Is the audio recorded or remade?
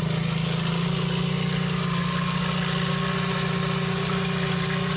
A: recorded